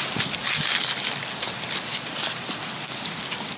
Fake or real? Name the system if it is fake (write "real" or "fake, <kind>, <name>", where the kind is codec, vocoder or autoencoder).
real